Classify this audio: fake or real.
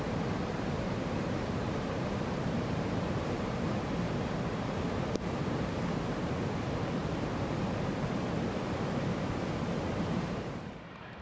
fake